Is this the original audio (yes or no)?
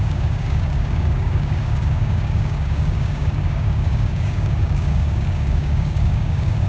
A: no